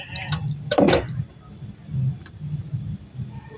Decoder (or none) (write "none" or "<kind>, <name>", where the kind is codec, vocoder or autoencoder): none